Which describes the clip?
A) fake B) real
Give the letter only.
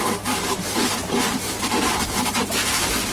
A